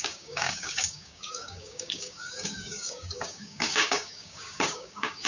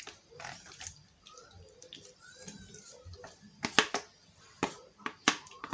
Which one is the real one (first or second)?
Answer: second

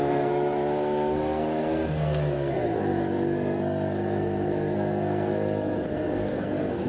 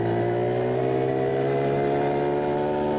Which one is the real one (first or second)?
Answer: second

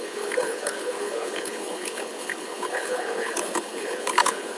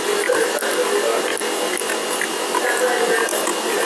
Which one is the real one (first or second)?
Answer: second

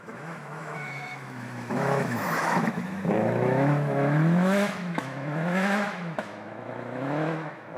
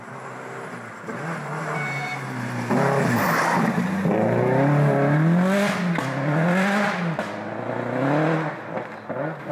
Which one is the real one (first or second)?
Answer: second